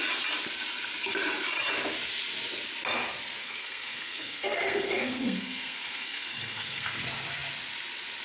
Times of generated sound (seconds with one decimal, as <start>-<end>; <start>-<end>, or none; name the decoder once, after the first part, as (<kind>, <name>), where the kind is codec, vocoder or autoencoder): 3.4-7.0 (codec, SNAC)